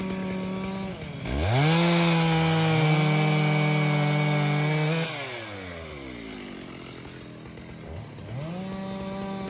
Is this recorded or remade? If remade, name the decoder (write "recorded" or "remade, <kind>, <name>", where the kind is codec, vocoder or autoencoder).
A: recorded